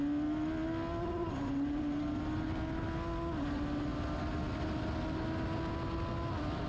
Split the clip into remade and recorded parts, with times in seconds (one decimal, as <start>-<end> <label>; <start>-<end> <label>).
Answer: 0.0-1.2 recorded; 1.2-2.2 remade; 2.2-6.7 recorded